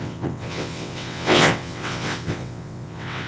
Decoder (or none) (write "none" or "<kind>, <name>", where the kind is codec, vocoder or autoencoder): vocoder, WaveNeXt